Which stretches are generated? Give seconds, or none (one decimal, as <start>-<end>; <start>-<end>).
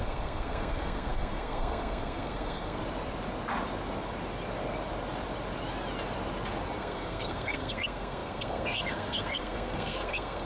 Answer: 0.0-2.8; 6.8-10.5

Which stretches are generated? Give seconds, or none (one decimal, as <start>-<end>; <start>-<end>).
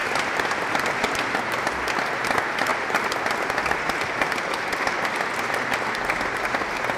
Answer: none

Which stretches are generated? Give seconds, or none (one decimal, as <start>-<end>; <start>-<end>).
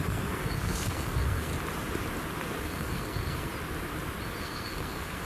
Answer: 0.0-1.5; 2.6-3.5; 4.4-5.3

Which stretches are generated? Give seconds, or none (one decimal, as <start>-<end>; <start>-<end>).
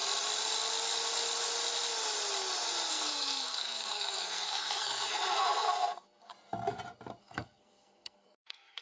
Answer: 2.9-6.3; 7.2-8.8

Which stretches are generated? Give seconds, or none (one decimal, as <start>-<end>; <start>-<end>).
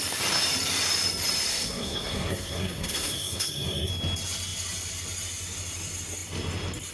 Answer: 1.5-3.9